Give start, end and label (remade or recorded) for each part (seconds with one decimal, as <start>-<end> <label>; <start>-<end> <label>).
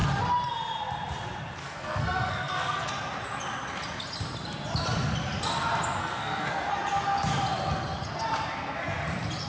0.0-1.6 recorded; 1.6-2.9 remade; 2.9-6.0 recorded; 6.0-6.7 remade; 6.7-9.5 recorded